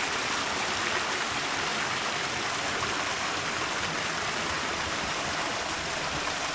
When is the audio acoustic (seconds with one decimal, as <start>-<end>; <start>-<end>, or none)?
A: 0.0-6.5